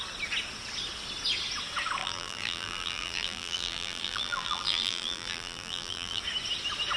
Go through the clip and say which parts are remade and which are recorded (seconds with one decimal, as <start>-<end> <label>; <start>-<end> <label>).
0.0-2.0 recorded; 2.0-6.2 remade; 6.2-7.0 recorded